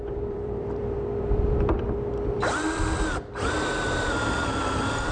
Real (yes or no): no